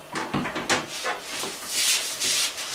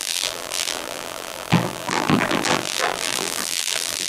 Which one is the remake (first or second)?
second